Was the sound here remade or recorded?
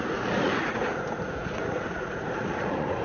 remade